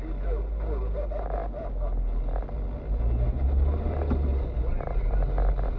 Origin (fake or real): real